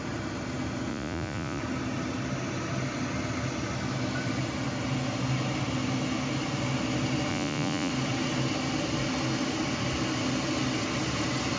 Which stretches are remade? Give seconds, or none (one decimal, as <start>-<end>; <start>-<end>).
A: 0.9-1.6; 7.3-7.9